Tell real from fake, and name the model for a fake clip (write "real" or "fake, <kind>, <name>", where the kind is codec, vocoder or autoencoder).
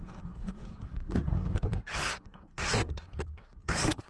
fake, codec, SNAC